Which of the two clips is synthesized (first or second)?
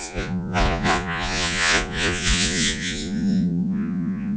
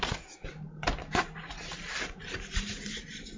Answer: first